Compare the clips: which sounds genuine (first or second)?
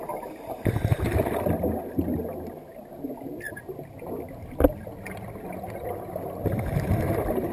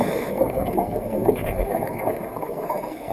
first